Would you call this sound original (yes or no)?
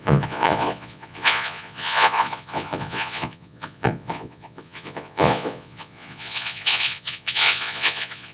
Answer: no